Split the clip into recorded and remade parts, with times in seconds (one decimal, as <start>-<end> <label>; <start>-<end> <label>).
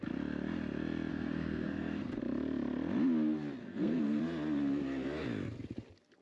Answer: 0.0-1.1 recorded; 1.1-2.2 remade; 2.2-3.6 recorded; 3.6-4.2 remade; 4.2-6.2 recorded